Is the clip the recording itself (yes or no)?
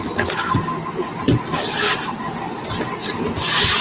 yes